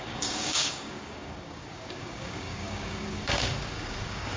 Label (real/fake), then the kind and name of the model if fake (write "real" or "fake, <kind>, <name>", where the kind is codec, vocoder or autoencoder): fake, codec, DAC